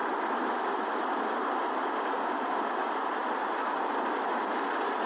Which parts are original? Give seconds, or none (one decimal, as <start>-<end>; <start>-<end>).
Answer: 0.0-5.1